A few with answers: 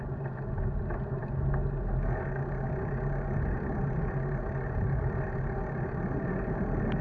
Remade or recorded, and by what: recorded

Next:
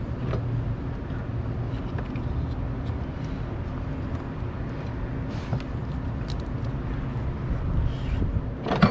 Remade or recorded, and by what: recorded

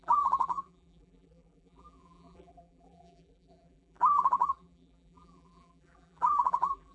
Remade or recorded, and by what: remade, vocoder, BigVGAN v2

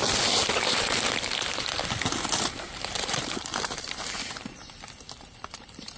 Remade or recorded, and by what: remade, vocoder, BigVGAN v2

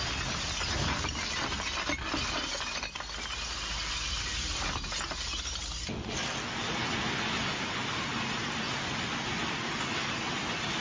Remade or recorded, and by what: recorded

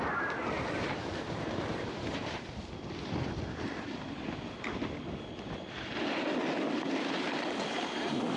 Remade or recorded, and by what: recorded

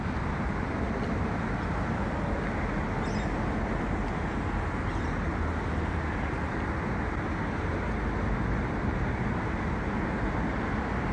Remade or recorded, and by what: recorded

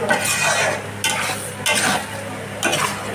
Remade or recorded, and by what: recorded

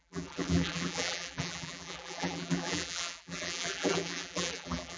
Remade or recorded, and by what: remade, vocoder, BigVGAN v2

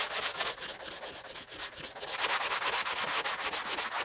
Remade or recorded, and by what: recorded